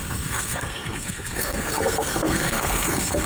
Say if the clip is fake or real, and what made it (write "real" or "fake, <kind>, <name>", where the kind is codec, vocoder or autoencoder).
fake, codec, SNAC